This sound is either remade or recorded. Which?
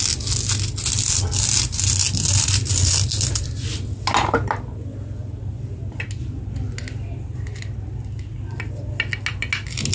recorded